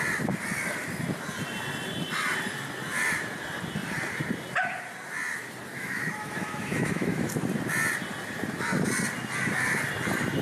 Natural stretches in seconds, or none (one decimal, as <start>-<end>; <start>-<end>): 0.0-5.7; 7.3-10.4